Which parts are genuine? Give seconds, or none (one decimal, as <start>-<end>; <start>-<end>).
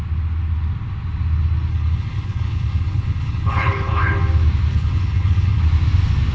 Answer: 0.0-1.7; 4.2-4.7; 5.6-6.3